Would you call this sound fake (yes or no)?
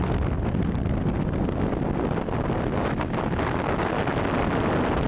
no